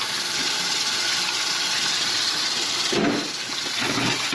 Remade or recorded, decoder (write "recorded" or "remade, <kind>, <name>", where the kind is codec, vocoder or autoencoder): recorded